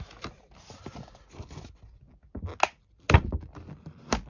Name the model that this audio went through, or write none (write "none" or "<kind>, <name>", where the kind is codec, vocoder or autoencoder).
none